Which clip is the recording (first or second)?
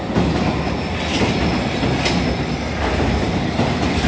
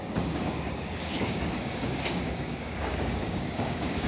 first